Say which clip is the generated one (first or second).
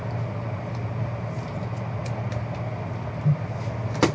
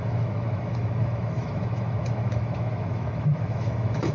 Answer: second